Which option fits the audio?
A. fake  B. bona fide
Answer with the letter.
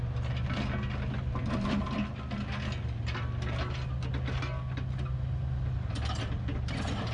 B